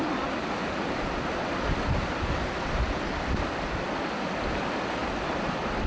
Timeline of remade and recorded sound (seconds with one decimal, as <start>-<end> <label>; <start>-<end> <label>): 0.0-5.9 recorded